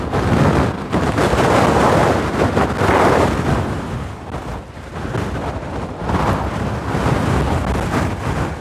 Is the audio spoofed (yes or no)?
no